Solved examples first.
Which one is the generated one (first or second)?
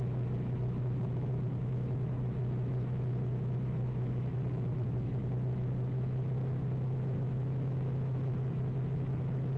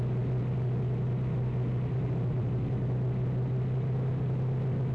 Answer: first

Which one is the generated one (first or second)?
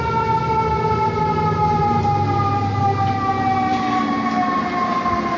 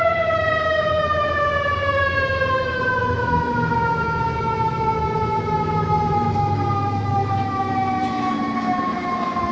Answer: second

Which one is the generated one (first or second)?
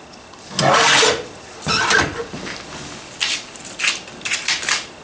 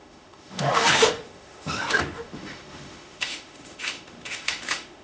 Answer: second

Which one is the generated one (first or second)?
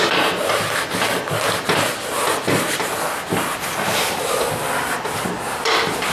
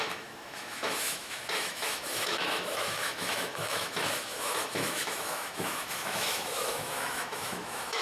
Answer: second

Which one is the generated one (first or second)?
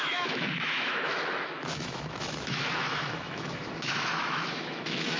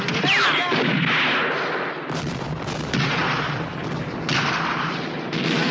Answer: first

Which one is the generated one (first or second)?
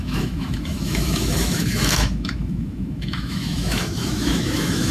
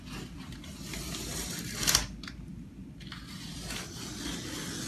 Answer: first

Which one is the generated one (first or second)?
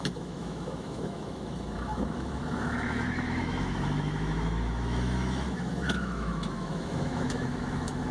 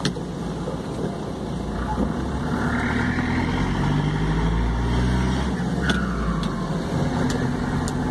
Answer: first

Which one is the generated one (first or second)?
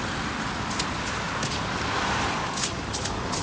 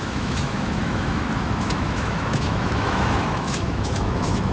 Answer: second